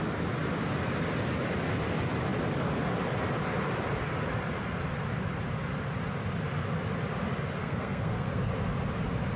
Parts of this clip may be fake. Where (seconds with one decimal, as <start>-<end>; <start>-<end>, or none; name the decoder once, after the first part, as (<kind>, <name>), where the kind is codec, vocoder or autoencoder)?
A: 7.6-8.5 (codec, SNAC)